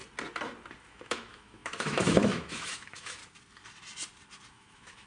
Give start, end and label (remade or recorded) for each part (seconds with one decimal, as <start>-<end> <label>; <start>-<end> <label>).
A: 0.0-0.9 recorded; 0.9-3.2 remade; 3.2-4.5 recorded; 4.5-5.1 remade